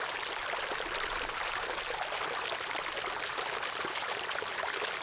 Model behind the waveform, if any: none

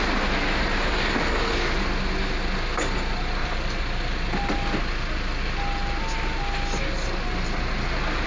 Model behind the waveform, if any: none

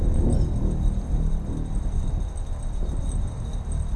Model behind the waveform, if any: none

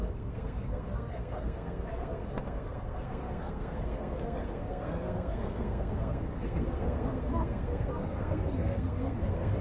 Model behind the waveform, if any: codec, SNAC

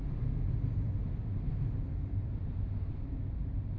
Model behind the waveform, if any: none